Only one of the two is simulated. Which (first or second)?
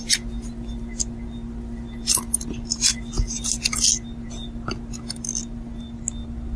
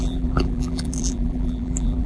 second